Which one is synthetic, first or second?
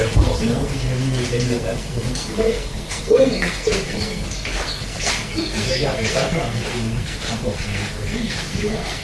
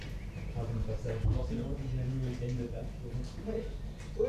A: first